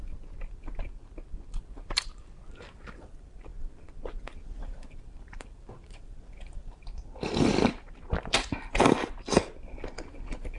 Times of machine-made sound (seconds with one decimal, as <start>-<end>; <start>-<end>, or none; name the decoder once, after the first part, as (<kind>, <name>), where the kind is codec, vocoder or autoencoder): none